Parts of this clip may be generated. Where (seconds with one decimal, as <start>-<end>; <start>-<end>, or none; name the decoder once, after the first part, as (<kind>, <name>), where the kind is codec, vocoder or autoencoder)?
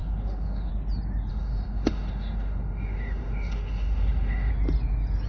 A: 0.0-0.7 (autoencoder, DAC-VAE); 1.3-4.5